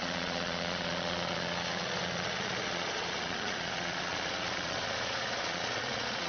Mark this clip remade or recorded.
remade